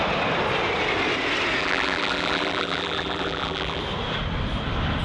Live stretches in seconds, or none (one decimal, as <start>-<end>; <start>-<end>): 0.0-1.6; 3.8-5.0